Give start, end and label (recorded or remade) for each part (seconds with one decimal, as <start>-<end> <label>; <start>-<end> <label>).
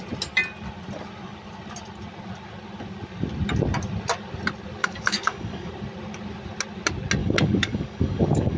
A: 0.0-4.8 recorded; 4.8-5.7 remade; 5.7-7.2 recorded; 7.2-8.6 remade